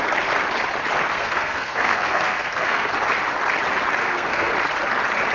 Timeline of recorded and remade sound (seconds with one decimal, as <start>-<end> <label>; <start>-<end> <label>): 0.0-1.1 recorded; 1.1-2.9 remade; 2.9-4.0 recorded; 4.0-4.5 remade; 4.5-5.3 recorded